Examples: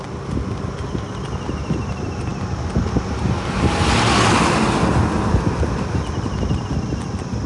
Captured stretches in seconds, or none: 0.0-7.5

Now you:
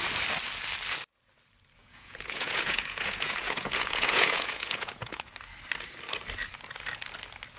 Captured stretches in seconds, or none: 0.0-1.8; 5.3-7.6

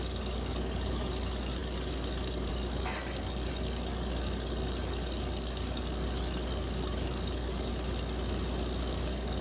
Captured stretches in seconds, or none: 7.7-8.8

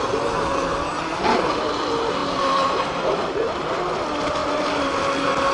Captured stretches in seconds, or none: 0.0-2.2; 3.1-5.5